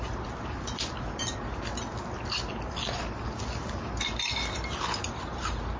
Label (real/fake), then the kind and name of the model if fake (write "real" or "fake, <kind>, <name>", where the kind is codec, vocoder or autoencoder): real